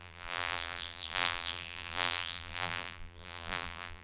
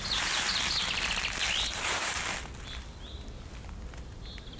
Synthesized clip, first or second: first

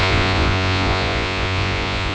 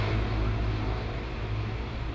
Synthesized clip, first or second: first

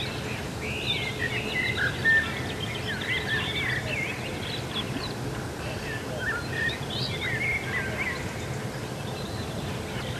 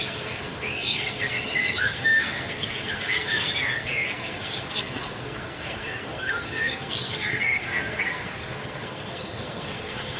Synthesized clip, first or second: second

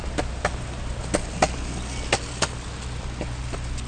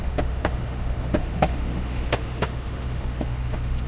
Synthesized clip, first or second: second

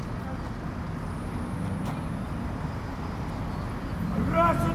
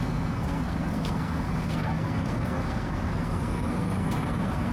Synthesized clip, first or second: second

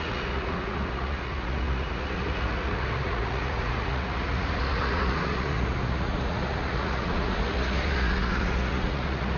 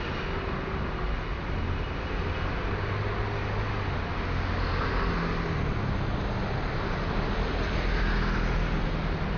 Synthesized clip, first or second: first